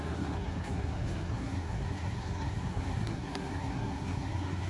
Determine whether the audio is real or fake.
fake